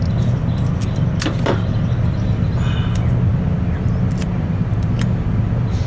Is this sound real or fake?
real